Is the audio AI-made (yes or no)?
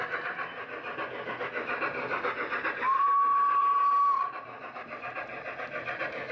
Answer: no